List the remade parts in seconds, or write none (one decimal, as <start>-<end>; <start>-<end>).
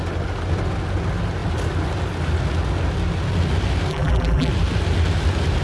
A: 3.9-4.5